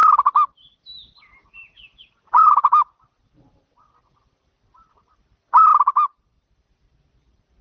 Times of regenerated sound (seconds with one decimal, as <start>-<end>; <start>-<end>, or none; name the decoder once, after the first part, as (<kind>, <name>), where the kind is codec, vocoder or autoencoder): 1.4-2.7 (vocoder, Vocos)